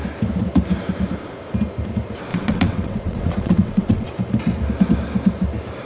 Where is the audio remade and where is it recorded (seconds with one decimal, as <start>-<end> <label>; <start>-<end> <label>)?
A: 0.0-2.3 recorded; 2.3-4.1 remade; 4.1-5.9 recorded